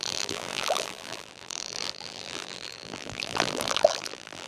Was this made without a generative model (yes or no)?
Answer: no